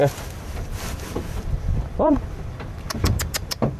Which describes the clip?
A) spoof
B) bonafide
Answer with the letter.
A